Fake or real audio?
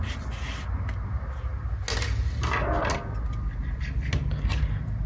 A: real